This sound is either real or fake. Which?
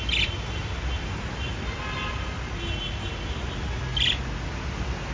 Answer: real